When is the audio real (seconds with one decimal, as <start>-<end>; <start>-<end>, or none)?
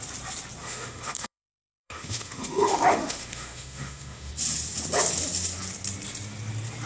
0.0-0.6; 4.3-6.9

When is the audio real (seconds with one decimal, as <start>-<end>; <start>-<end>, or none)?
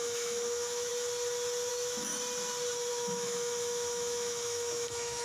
0.9-1.7; 2.1-2.9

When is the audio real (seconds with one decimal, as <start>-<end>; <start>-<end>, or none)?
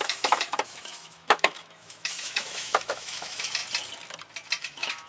3.6-4.6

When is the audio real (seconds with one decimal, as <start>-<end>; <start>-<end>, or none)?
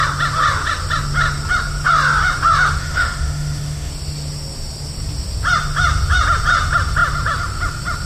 0.0-2.8; 3.9-8.1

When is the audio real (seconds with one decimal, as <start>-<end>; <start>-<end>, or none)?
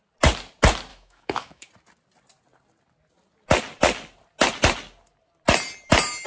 0.0-0.9; 1.7-6.3